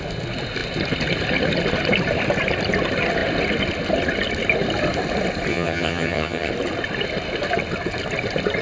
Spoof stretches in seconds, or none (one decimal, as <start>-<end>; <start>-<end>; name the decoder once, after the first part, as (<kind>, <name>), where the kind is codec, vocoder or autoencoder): 5.5-6.5 (vocoder, HiFi-GAN)